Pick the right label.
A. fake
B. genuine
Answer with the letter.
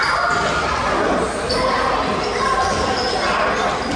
B